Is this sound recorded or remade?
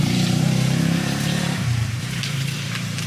remade